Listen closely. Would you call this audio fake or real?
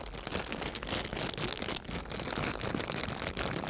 real